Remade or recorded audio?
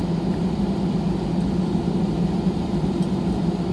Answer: recorded